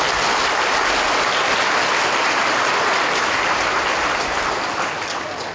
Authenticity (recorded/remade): recorded